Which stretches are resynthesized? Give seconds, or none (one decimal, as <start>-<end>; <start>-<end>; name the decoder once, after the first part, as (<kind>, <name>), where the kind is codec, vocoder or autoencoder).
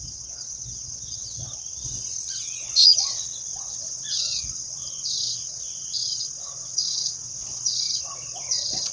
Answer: 0.0-8.9 (vocoder, WaveNeXt)